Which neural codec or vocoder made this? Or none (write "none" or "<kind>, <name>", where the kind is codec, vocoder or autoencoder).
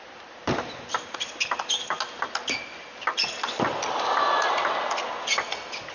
none